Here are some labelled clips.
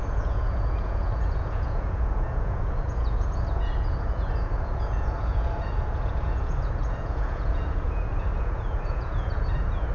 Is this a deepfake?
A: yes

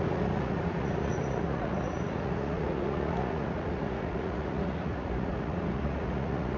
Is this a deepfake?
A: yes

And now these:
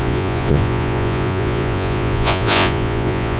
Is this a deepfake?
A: yes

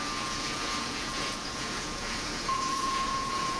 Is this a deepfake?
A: yes